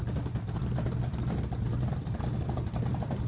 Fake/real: real